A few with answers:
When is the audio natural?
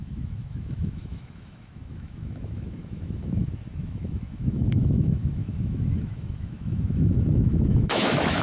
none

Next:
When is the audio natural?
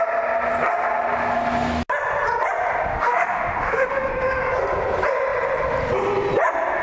0.0-2.9; 4.4-6.8